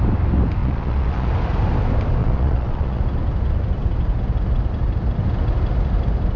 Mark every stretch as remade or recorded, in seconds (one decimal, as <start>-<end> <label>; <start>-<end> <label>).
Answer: 0.0-0.6 recorded; 0.6-1.3 remade; 1.3-2.2 recorded; 2.2-3.0 remade; 3.0-6.4 recorded